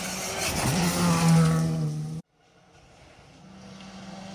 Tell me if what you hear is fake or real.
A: real